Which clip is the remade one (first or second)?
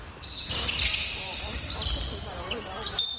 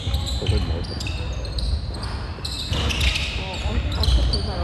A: first